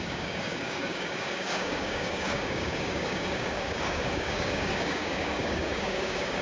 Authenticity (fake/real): fake